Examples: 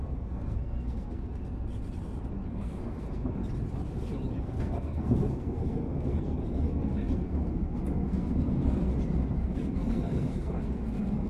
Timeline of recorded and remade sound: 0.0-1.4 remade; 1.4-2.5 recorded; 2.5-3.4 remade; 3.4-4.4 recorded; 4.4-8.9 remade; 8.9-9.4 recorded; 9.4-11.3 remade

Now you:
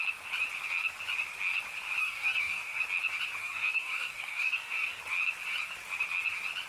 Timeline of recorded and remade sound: 0.0-2.0 recorded; 2.0-2.8 remade; 2.8-3.4 recorded; 3.4-5.0 remade; 5.0-6.7 recorded

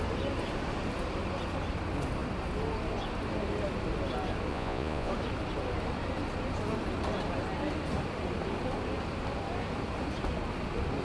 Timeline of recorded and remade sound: 0.0-4.5 recorded; 4.5-5.1 remade; 5.1-11.0 recorded

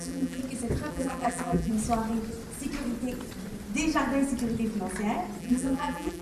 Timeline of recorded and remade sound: 0.0-0.4 remade; 0.4-0.9 recorded; 0.9-1.7 remade; 1.7-5.4 recorded; 5.4-6.2 remade

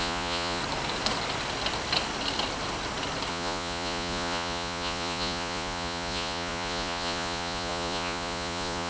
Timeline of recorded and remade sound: 0.0-0.6 remade; 0.6-3.3 recorded; 3.3-8.9 remade